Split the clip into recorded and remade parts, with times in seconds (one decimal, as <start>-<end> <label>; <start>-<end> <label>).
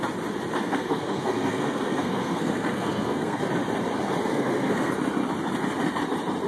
0.0-0.6 recorded; 0.6-3.4 remade; 3.4-4.3 recorded; 4.3-4.9 remade; 4.9-6.5 recorded